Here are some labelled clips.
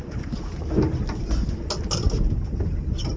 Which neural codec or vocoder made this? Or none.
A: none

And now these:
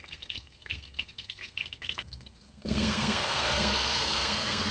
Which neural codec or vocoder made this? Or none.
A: codec, SNAC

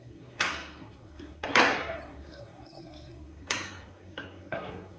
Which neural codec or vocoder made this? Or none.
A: codec, SNAC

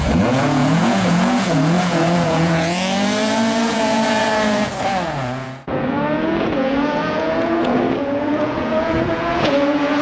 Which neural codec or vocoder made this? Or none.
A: vocoder, Vocos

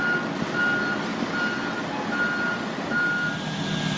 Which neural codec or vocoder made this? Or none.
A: none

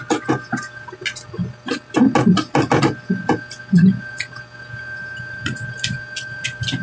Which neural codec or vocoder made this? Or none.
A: none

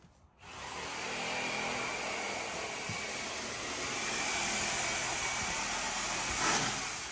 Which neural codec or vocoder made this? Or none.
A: none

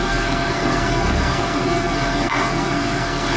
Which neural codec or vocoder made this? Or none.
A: codec, SNAC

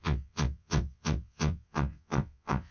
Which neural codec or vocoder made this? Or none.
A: vocoder, WaveNeXt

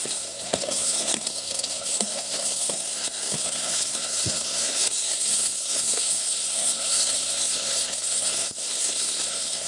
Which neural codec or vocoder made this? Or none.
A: codec, SNAC